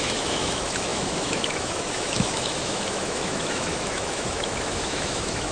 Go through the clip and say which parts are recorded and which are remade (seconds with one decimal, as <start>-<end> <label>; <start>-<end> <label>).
0.0-5.5 remade

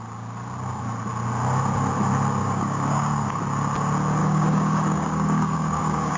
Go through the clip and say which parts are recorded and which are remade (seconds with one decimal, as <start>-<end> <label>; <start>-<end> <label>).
0.0-2.4 recorded; 2.4-3.4 remade; 3.4-4.2 recorded; 4.2-6.2 remade

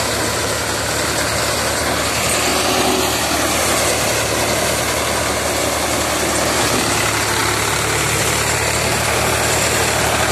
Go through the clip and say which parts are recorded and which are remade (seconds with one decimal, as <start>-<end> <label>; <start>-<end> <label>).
0.0-10.3 recorded